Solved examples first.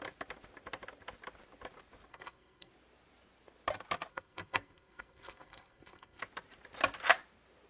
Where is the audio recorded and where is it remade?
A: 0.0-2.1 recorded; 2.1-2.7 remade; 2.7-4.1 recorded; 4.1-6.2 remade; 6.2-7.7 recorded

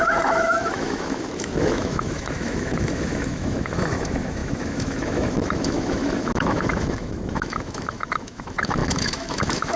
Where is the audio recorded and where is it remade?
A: 0.0-9.8 remade

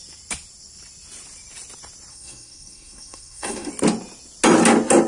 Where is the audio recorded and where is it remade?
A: 0.0-2.1 recorded; 2.1-3.7 remade; 3.7-5.1 recorded

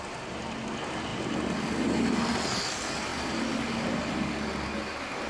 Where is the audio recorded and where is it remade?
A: 0.0-5.3 recorded